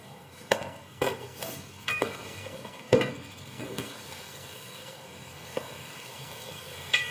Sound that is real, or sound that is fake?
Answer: fake